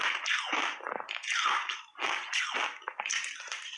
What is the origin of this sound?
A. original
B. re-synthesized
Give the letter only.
A